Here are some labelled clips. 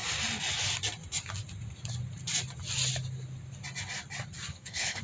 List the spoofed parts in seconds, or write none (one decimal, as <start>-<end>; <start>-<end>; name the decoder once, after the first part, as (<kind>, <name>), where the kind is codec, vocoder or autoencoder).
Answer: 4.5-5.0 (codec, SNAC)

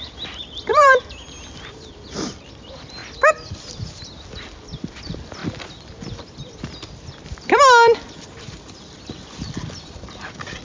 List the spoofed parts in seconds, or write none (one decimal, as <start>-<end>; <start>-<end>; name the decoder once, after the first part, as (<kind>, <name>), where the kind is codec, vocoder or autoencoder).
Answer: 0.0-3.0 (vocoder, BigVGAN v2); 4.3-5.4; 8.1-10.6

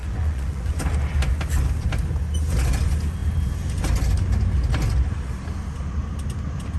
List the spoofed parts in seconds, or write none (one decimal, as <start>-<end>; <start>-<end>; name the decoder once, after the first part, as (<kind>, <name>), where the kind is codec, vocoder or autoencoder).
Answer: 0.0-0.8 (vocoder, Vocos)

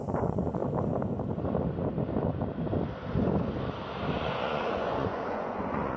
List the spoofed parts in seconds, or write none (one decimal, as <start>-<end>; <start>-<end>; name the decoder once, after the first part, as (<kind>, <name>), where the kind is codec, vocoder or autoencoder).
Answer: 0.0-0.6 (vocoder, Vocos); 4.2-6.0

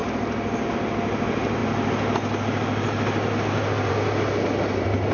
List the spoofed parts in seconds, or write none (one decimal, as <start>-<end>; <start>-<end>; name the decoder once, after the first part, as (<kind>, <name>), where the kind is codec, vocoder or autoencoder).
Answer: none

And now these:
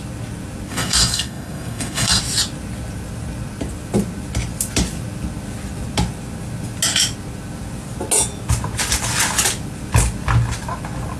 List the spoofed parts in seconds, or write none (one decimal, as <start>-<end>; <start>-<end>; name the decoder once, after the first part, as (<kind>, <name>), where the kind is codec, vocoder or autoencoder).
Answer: 0.7-2.2 (codec, SNAC)

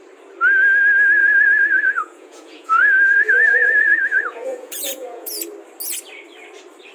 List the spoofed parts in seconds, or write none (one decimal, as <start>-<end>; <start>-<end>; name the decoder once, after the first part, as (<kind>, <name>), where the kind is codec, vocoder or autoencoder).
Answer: 1.2-5.3 (vocoder, Vocos)